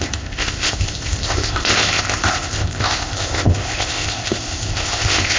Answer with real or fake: fake